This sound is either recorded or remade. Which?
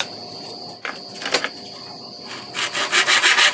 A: recorded